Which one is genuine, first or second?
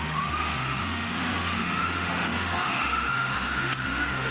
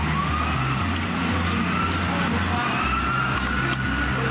second